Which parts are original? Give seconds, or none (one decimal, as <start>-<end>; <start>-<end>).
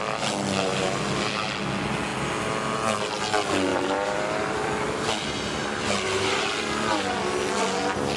0.0-3.7; 5.1-8.2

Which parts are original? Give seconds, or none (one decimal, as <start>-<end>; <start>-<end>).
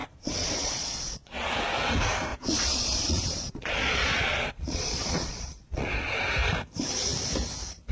1.5-2.3; 6.2-7.9